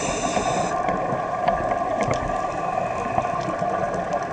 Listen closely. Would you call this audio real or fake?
real